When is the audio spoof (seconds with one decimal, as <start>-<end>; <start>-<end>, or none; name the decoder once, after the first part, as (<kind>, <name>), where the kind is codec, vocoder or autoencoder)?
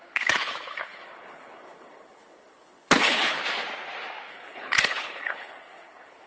0.0-3.4 (codec, HILCodec); 4.3-6.3